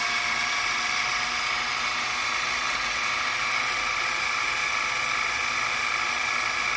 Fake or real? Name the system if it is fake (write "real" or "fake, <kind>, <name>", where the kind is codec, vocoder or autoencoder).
real